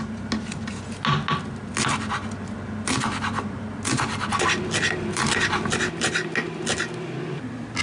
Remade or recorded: recorded